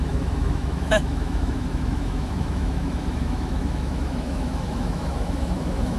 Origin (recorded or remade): remade